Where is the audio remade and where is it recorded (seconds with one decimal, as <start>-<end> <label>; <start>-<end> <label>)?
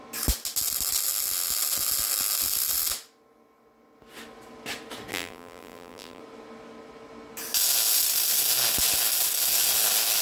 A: 0.0-5.1 recorded; 5.1-6.2 remade; 6.2-10.2 recorded